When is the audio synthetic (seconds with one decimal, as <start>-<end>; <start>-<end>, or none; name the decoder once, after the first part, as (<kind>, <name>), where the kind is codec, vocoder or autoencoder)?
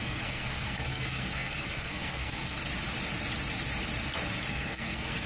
0.0-2.6 (codec, SNAC); 4.5-5.3